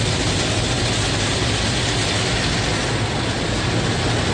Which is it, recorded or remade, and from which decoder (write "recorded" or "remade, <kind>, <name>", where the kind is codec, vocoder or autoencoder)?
recorded